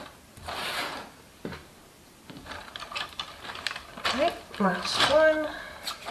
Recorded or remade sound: remade